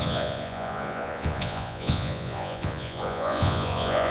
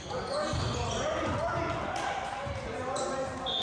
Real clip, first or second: second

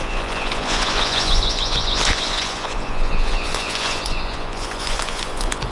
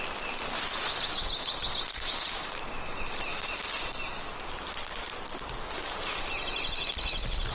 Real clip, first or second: second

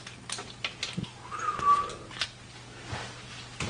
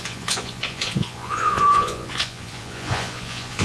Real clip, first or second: first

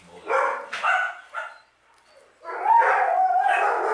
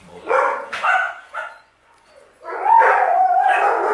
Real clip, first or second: first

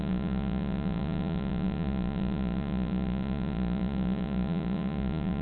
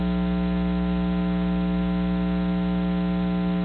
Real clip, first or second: second